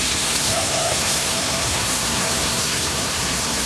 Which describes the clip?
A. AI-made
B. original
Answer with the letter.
A